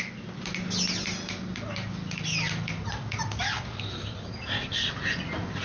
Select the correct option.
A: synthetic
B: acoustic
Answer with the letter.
B